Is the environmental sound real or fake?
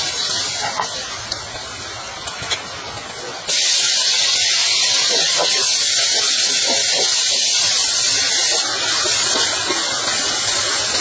real